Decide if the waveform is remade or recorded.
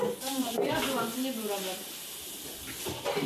recorded